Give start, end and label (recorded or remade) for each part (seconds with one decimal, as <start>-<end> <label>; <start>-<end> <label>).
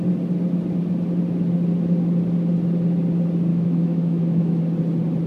0.0-3.5 recorded; 3.5-4.6 remade; 4.6-5.3 recorded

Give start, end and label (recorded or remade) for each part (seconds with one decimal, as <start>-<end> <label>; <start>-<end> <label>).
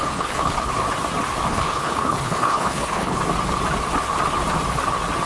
0.0-0.7 remade; 0.7-1.5 recorded; 1.5-3.2 remade; 3.2-5.3 recorded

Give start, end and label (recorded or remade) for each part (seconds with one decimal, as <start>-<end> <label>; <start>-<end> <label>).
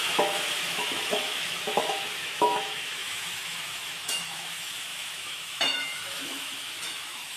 0.0-7.4 remade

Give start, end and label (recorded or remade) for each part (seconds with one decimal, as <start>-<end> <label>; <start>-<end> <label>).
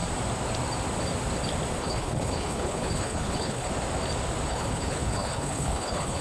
0.0-1.8 recorded; 1.8-3.7 remade; 3.7-4.5 recorded; 4.5-6.2 remade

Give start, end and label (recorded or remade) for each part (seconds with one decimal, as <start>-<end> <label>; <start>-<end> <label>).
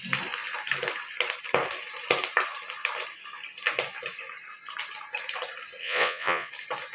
0.0-5.8 recorded; 5.8-6.5 remade; 6.5-6.9 recorded